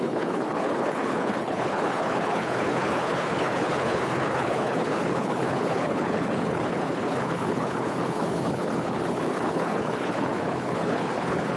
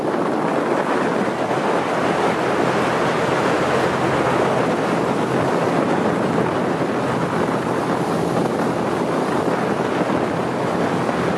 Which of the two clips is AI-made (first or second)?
first